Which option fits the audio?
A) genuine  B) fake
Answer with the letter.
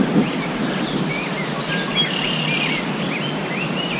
A